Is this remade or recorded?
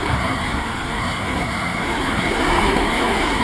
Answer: remade